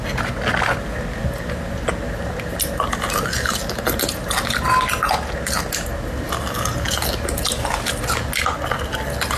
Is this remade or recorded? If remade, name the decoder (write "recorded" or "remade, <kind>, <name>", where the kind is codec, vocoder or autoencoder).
recorded